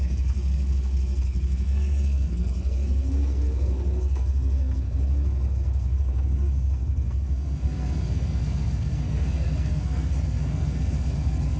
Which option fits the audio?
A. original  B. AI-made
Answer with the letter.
B